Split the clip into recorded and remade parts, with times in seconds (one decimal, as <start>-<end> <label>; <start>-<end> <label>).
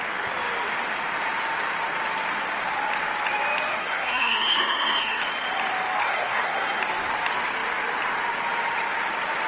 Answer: 0.0-3.8 recorded; 3.8-5.2 remade; 5.2-6.0 recorded; 6.0-6.8 remade; 6.8-9.5 recorded